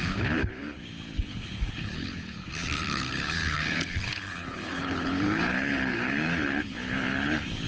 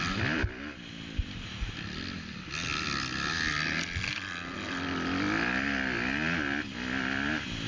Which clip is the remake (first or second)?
first